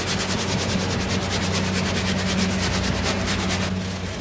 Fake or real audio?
real